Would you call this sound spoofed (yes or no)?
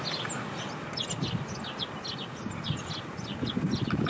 no